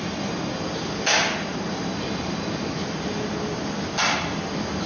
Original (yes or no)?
yes